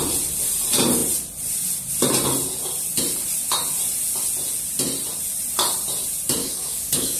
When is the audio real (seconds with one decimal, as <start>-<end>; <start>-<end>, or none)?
0.0-6.4